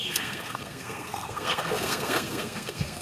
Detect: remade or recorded remade